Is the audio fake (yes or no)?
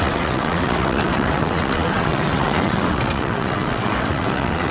yes